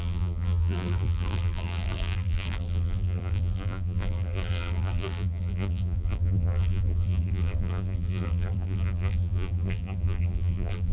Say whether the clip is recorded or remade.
remade